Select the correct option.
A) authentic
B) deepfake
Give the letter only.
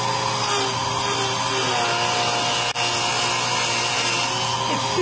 A